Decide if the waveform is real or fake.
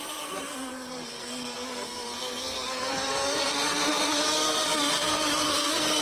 fake